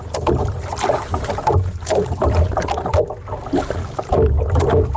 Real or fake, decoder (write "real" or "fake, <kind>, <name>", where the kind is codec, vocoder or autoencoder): real